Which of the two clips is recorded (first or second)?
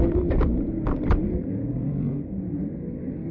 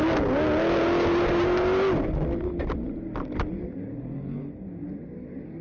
second